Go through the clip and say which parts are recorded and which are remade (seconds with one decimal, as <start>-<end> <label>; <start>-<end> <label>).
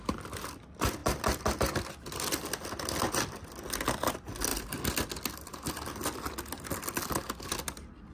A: 0.0-8.1 recorded